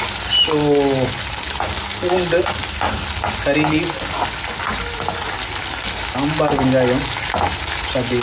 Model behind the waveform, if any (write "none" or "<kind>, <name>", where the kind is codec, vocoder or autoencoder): none